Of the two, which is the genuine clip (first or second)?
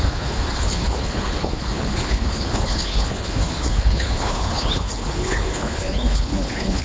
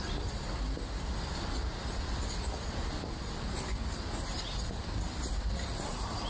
second